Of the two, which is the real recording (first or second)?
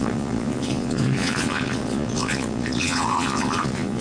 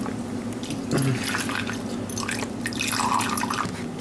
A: second